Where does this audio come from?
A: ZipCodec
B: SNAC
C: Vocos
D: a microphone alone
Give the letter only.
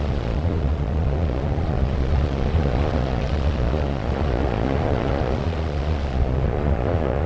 C